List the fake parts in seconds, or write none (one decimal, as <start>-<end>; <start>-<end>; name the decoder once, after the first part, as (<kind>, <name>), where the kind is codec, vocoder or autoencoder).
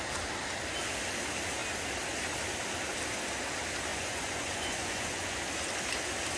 3.9-5.4 (vocoder, Vocos)